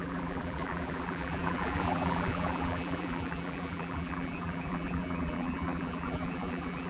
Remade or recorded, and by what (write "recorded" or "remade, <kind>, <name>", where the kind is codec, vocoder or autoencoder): remade, vocoder, BigVGAN v2